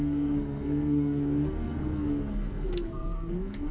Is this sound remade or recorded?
remade